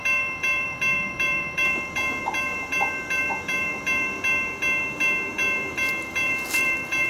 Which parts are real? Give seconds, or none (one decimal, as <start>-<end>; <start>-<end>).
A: 4.2-5.4